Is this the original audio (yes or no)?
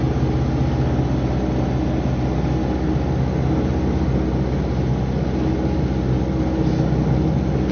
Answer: yes